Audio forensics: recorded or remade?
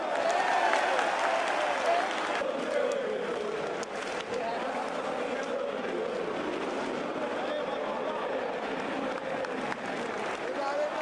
recorded